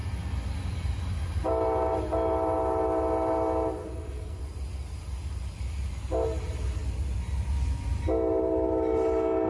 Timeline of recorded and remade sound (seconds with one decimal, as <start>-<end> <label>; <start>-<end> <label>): 0.0-3.8 recorded; 3.8-4.4 remade; 4.4-9.5 recorded